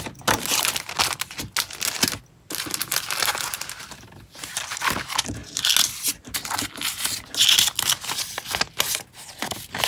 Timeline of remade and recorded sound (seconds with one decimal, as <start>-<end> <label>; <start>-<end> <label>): 0.0-9.9 recorded